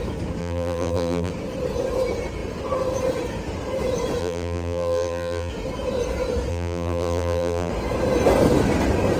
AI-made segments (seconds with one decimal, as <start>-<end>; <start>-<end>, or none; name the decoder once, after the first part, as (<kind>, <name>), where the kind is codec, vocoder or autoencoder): 0.4-1.3 (vocoder, BigVGAN v2); 4.2-5.5; 6.5-7.7